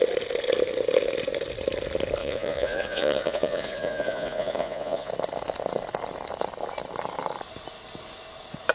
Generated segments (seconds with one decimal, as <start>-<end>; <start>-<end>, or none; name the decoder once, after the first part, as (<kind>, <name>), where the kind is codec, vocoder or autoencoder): 2.2-5.1 (vocoder, Vocos)